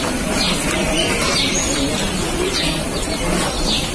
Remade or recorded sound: remade